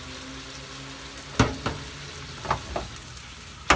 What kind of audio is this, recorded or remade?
recorded